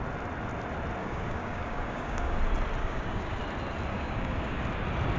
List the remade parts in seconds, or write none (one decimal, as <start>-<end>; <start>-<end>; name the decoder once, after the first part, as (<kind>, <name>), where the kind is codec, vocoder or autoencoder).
1.0-2.4 (codec, DAC); 2.8-3.4; 3.9-4.6